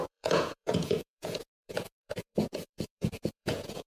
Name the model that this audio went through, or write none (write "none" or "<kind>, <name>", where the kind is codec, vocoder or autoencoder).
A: vocoder, Vocos